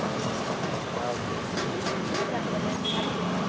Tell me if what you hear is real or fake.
fake